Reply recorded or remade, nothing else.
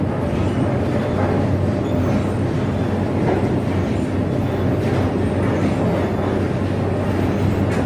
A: recorded